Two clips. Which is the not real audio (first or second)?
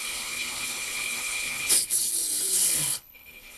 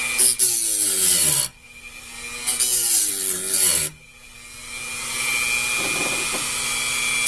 first